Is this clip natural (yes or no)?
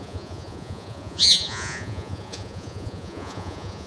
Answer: no